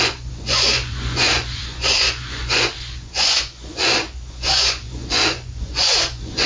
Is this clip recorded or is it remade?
remade